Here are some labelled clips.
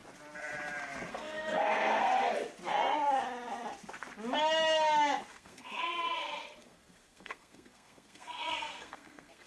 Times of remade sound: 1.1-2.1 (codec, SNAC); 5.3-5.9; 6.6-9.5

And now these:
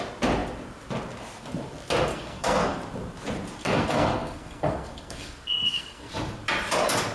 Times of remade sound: 2.1-2.8 (codec, SNAC); 3.6-6.1

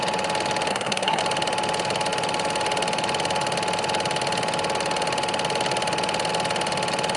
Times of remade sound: 0.7-1.2 (codec, SNAC)

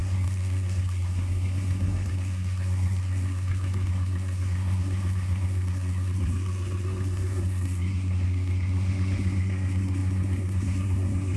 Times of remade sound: 0.0-11.4 (codec, SNAC)

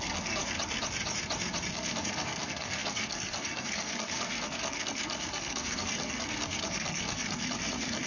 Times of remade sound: 0.0-0.4 (codec, SNAC); 1.7-8.1

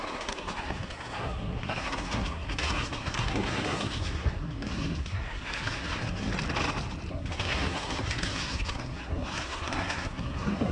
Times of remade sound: 0.0-6.3 (codec, SNAC); 7.1-10.7

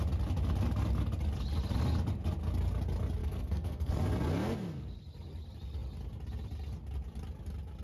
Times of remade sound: 3.2-3.9 (codec, SNAC)